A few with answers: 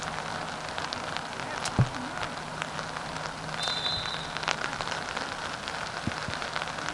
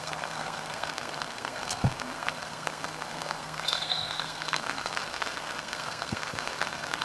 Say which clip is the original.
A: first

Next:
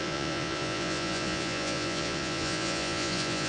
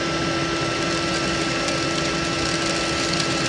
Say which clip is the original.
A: second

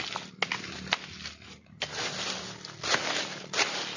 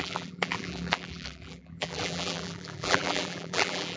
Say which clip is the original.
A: first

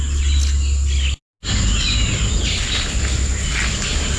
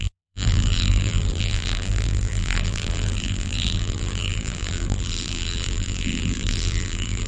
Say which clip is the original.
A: first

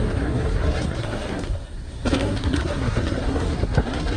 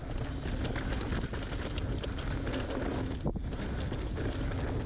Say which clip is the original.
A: second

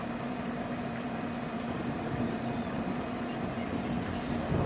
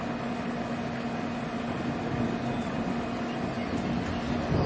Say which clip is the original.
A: second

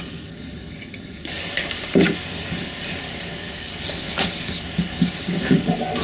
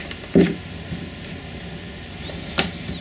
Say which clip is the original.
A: second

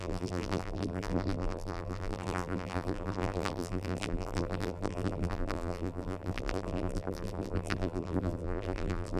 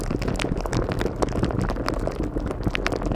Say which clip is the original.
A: second